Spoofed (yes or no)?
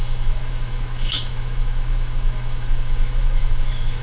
yes